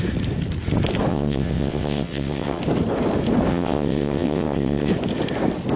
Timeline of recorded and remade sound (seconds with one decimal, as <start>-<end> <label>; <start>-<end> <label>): 0.0-1.1 recorded; 1.1-2.6 remade; 2.6-3.5 recorded; 3.5-4.9 remade; 4.9-5.8 recorded